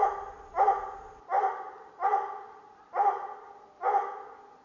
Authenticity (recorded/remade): recorded